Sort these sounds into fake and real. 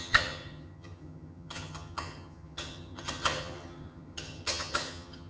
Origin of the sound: fake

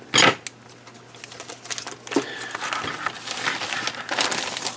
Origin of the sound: real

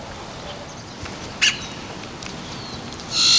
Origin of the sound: real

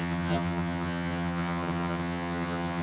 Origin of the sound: fake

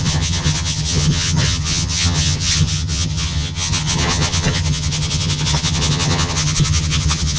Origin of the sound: fake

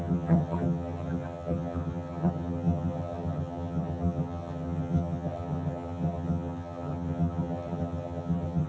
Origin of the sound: fake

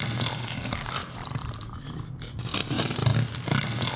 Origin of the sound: real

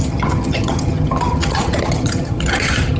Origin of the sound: fake